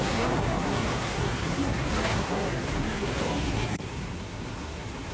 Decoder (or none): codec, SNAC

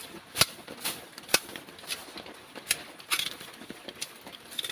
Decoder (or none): none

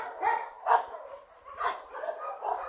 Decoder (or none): none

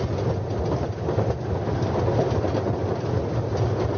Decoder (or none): none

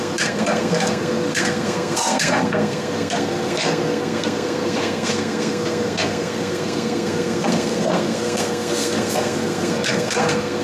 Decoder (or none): codec, SNAC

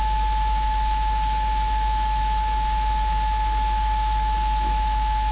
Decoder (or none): autoencoder, DAC-VAE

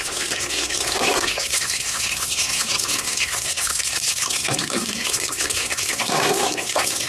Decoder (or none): codec, SNAC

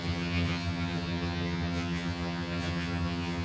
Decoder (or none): vocoder, HiFi-GAN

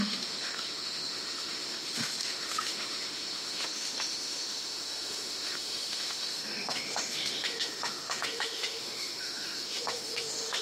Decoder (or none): autoencoder, DAC-VAE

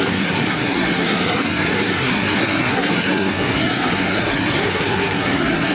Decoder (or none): codec, SNAC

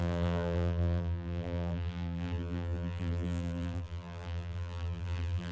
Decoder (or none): vocoder, BigVGAN v2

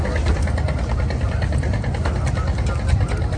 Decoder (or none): none